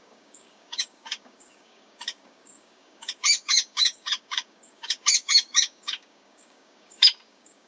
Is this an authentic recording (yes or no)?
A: no